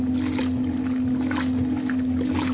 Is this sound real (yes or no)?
yes